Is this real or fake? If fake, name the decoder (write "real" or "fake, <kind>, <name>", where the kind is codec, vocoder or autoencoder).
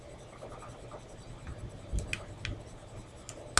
real